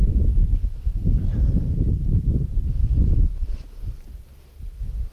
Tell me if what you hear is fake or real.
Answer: fake